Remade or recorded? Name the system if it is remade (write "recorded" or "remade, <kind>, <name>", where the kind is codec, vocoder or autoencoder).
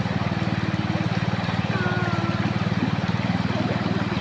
recorded